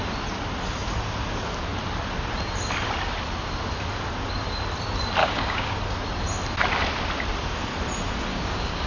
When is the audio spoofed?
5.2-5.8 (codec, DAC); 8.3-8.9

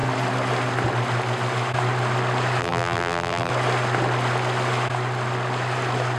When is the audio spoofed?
2.6-3.5 (vocoder, BigVGAN v2)

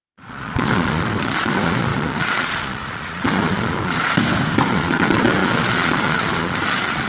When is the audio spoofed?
0.0-4.0 (vocoder, Vocos); 4.7-7.1